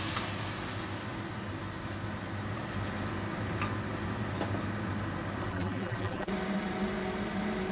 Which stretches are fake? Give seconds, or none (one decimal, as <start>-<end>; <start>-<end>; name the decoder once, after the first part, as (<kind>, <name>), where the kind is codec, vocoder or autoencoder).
5.5-6.3 (vocoder, BigVGAN v2)